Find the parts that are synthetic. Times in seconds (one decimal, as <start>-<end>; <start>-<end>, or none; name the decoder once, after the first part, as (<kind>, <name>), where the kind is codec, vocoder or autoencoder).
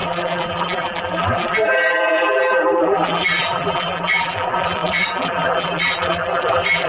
0.0-6.9 (vocoder, BigVGAN v2)